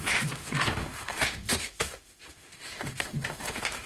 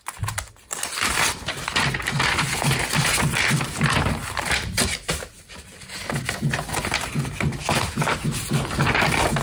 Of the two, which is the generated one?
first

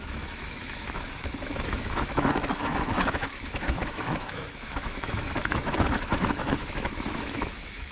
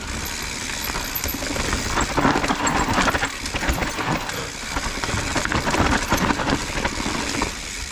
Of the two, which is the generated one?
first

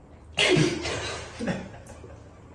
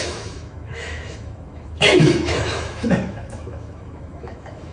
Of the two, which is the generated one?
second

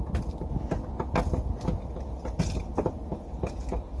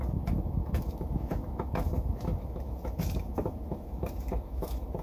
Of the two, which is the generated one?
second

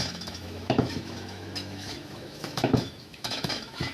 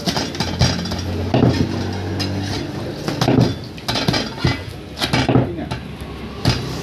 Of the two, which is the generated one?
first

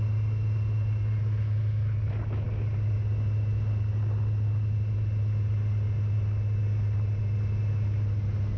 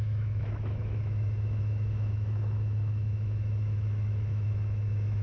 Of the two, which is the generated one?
second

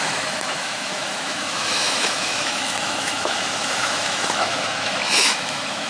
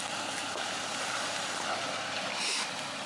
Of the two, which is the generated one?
first